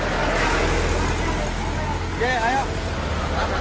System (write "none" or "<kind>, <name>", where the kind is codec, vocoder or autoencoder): none